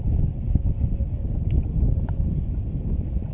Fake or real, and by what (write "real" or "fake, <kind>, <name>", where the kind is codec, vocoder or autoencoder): real